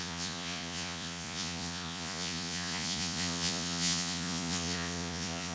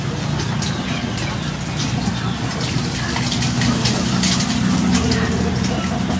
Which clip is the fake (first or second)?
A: first